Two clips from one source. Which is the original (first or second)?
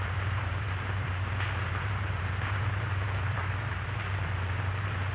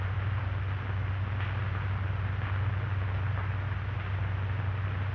second